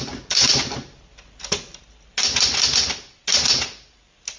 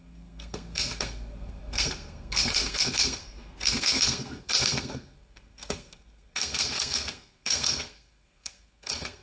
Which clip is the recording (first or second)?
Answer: first